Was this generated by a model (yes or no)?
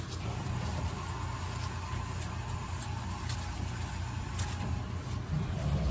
no